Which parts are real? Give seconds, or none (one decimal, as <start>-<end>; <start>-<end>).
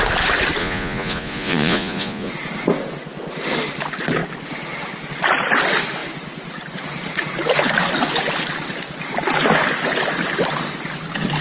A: 0.0-0.6; 2.3-11.4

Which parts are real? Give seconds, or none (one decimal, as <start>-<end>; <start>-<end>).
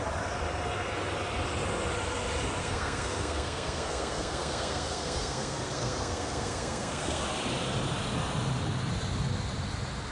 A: 0.0-2.6; 7.2-10.1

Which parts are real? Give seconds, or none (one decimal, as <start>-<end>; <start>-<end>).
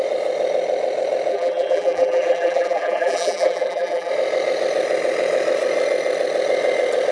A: 0.0-1.3; 4.1-7.1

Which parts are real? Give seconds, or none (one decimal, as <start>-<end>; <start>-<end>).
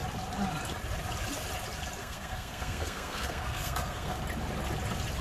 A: 0.0-2.0; 4.2-5.2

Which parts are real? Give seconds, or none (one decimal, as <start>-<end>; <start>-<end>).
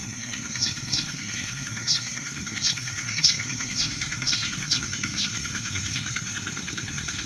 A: none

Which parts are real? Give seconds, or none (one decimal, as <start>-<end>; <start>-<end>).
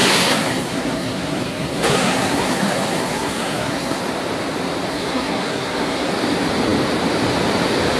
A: 4.0-4.9; 6.1-8.0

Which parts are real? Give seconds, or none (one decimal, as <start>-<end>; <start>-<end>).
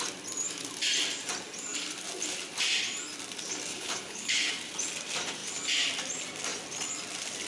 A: 0.0-3.7; 4.5-7.5